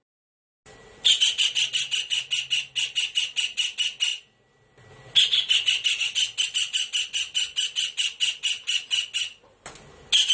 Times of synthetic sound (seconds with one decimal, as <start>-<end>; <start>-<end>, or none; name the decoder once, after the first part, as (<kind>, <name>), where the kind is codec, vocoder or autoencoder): none

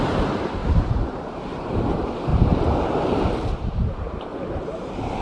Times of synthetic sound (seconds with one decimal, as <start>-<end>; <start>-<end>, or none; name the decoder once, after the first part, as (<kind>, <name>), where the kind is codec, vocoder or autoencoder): 0.0-2.3 (vocoder, BigVGAN v2); 3.2-4.3

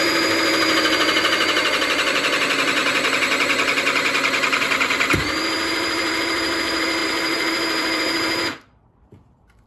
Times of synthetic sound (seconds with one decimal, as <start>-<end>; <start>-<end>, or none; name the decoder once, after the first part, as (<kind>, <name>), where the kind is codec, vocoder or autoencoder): 0.0-2.8 (vocoder, BigVGAN v2); 4.6-9.7

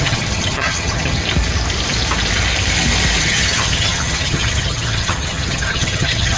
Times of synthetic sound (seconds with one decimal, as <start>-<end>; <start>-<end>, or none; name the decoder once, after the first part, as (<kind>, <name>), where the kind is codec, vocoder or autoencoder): 0.0-1.2 (vocoder, HiFi-GAN); 3.2-6.4

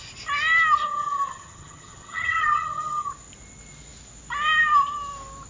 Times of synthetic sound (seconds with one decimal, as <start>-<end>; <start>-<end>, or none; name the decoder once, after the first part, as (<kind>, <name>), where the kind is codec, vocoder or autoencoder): 0.8-3.1 (vocoder, HiFi-GAN)